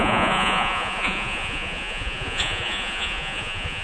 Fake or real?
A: fake